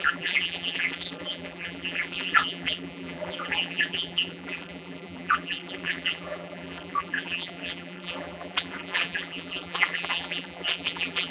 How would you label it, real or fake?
fake